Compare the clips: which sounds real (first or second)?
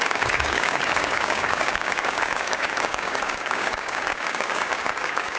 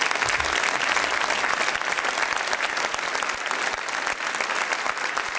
second